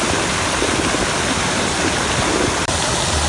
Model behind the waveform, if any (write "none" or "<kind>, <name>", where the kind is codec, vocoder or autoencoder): none